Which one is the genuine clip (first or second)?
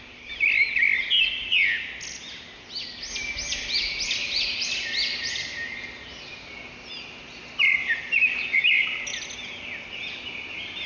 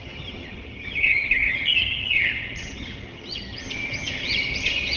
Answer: first